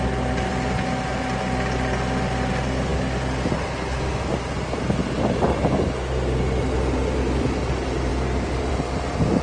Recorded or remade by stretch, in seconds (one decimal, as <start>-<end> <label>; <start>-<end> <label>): 0.0-9.4 recorded